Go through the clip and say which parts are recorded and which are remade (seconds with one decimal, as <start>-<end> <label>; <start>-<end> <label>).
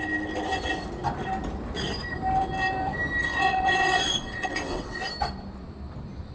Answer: 0.0-3.2 recorded; 3.2-5.0 remade; 5.0-6.3 recorded